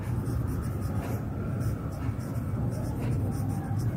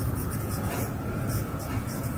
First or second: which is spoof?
second